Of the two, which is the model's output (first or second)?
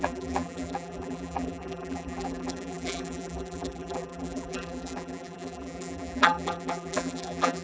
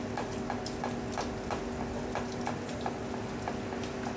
first